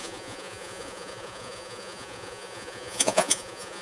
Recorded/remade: remade